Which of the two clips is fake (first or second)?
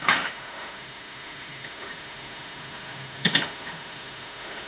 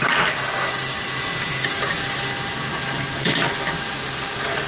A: first